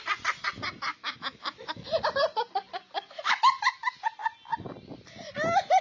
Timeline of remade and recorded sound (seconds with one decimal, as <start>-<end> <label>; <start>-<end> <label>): 0.0-0.9 recorded; 0.9-1.8 remade; 1.8-5.8 recorded